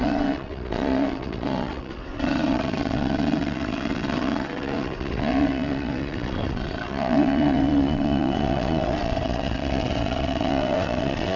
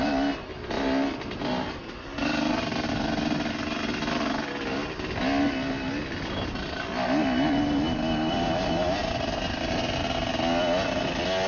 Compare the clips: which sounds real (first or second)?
second